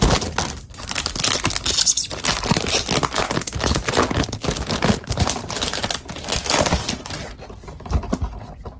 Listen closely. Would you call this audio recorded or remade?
recorded